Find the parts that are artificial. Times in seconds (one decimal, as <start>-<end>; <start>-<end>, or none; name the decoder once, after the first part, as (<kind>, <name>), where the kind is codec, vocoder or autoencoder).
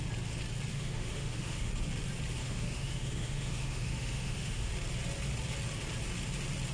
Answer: 0.7-1.7 (autoencoder, DAC-VAE); 2.4-4.7